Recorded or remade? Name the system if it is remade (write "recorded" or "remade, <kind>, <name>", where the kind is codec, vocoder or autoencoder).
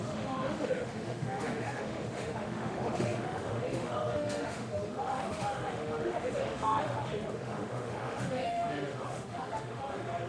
remade, autoencoder, DAC-VAE